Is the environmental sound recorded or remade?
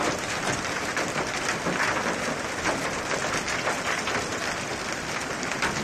remade